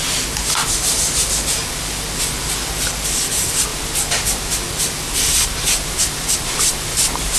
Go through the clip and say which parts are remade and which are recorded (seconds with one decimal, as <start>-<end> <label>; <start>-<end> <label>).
0.0-0.6 recorded; 0.6-1.2 remade; 1.2-3.7 recorded; 3.7-4.5 remade; 4.5-5.3 recorded; 5.3-7.4 remade